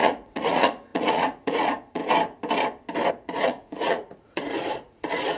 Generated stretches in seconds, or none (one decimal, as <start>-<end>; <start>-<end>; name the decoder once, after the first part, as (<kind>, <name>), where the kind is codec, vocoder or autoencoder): 0.0-2.0 (vocoder, Vocos); 3.1-5.4

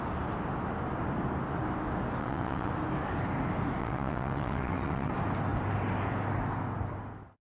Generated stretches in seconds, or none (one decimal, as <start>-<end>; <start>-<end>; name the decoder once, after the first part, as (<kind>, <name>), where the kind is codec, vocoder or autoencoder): 2.2-2.7 (vocoder, WaveNeXt); 3.8-5.1

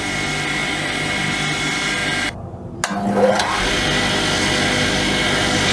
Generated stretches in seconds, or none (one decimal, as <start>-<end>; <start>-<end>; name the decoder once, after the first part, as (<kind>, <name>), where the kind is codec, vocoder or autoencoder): none

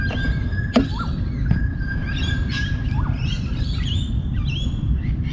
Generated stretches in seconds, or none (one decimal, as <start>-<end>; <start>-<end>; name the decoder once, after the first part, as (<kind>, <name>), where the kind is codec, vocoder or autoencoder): 0.9-4.1 (vocoder, BigVGAN v2)

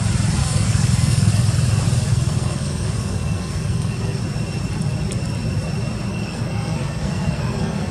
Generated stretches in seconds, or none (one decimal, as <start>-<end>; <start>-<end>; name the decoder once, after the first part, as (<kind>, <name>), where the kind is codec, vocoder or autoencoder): 0.4-1.3 (codec, SNAC); 2.1-4.2; 6.1-7.9

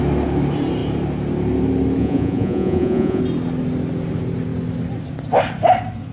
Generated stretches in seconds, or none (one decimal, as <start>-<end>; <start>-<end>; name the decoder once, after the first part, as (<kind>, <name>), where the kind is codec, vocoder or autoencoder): 2.0-3.2 (vocoder, Vocos)